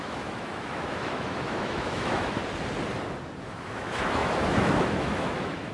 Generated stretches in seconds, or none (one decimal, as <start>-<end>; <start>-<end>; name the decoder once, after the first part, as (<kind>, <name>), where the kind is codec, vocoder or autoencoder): 0.0-2.4 (autoencoder, DAC-VAE); 3.4-5.7